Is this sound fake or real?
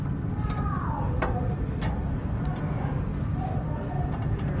real